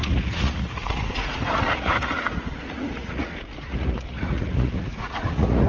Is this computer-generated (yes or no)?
yes